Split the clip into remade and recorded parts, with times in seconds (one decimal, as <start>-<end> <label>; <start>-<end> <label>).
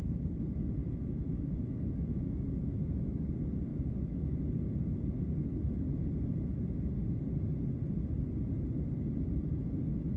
0.0-0.8 recorded; 0.8-3.3 remade; 3.3-3.7 recorded; 3.7-4.4 remade; 4.4-10.2 recorded